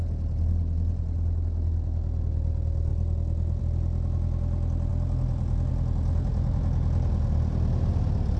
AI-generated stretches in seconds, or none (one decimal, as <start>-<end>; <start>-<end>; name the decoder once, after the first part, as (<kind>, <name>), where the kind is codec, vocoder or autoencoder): none

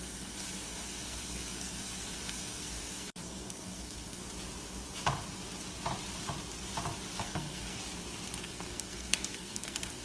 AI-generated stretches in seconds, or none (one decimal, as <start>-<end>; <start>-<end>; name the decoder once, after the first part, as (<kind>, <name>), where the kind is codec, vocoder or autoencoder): 0.0-4.2 (codec, SNAC); 7.2-7.8; 8.4-10.0

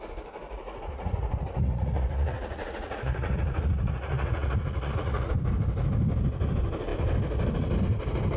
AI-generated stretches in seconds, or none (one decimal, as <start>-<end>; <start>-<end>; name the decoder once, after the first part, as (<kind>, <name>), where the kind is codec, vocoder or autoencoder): 0.4-5.3 (vocoder, Vocos)

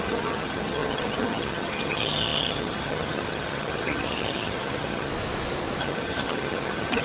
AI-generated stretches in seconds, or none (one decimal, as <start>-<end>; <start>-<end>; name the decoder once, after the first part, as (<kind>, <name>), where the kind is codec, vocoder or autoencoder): 0.0-5.1 (vocoder, HiFi-GAN); 5.8-7.0

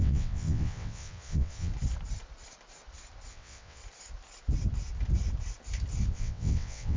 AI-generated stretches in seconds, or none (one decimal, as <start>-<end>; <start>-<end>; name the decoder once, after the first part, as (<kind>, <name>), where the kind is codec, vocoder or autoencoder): 0.0-1.7 (vocoder, WaveNeXt); 3.3-3.8; 6.1-7.0

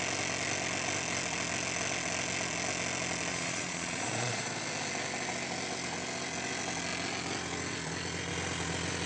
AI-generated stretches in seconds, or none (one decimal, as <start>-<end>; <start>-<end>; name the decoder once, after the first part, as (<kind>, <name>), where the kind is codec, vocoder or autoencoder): 3.3-4.5 (vocoder, Vocos)